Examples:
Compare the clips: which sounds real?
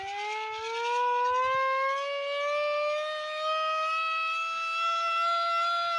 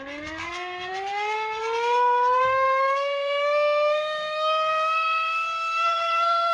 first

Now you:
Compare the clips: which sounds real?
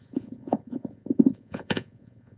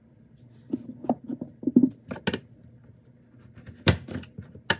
second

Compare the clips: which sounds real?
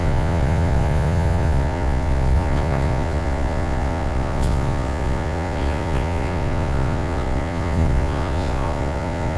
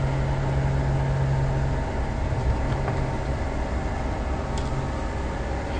second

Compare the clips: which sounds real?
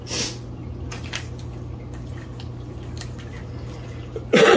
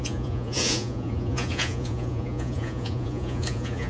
first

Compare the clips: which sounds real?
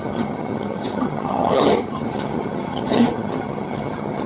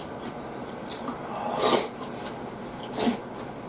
second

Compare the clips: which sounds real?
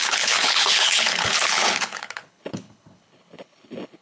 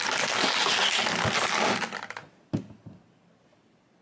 second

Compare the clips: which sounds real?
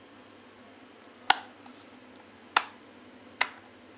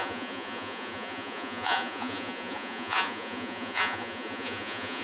first